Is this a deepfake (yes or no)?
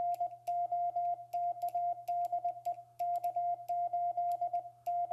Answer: no